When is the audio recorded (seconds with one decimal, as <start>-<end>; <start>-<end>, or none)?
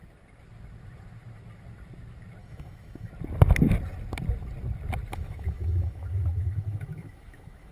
0.0-2.4; 3.1-5.1